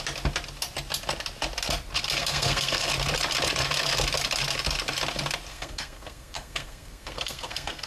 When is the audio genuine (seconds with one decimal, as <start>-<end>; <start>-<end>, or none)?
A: 0.0-2.2; 2.9-5.5